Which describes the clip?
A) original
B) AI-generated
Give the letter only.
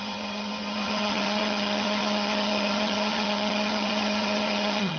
B